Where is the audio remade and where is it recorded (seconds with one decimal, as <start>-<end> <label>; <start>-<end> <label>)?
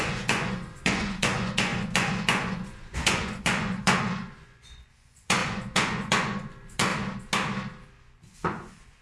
0.0-6.9 remade; 6.9-8.1 recorded; 8.1-9.0 remade